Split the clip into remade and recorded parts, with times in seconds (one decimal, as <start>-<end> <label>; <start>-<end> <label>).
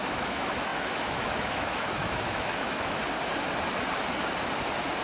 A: 0.0-3.0 remade; 3.0-5.0 recorded